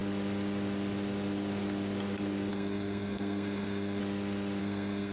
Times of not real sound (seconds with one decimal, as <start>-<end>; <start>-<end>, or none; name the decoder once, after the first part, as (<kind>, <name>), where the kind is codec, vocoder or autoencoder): 2.5-4.0 (codec, SNAC); 4.6-5.1